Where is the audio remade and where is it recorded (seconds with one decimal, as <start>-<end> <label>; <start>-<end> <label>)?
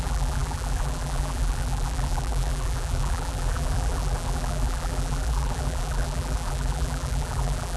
0.0-7.8 remade